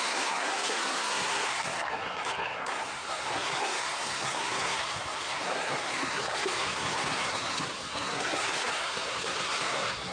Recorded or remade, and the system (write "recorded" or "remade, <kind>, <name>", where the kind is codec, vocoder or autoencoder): remade, codec, SNAC